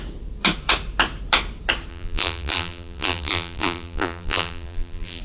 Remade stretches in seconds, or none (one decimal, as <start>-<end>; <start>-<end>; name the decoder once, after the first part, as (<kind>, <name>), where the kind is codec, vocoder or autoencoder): 1.9-5.2 (vocoder, BigVGAN v2)